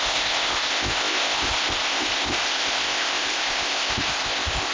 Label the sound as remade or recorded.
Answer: remade